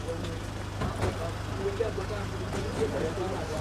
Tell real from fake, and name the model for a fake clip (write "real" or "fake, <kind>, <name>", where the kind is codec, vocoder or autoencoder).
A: real